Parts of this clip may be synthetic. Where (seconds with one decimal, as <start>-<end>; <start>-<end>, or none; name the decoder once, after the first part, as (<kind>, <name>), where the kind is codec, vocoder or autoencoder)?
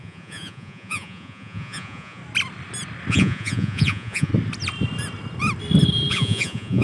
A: 0.0-2.2 (vocoder, Vocos); 3.1-4.3; 6.1-6.8